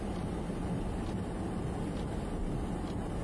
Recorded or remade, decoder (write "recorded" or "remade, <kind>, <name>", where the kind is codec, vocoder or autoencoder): recorded